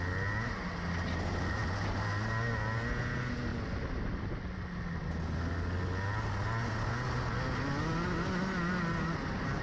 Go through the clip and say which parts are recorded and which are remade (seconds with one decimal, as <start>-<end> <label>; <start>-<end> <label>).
0.0-3.5 recorded; 3.5-4.3 remade; 4.3-9.6 recorded